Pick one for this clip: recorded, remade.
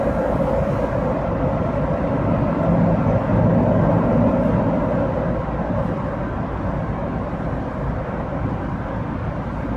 recorded